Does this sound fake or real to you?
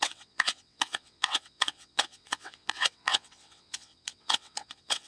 fake